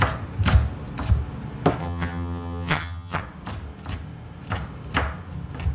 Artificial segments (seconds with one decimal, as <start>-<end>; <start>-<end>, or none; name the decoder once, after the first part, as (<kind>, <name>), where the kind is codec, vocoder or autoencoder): 1.8-3.2 (vocoder, HiFi-GAN)